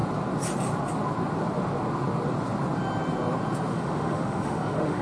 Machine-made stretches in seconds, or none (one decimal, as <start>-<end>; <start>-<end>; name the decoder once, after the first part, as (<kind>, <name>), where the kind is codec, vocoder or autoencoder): 3.7-5.0 (autoencoder, DAC-VAE)